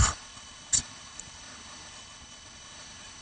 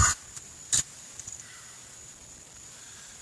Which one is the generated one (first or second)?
first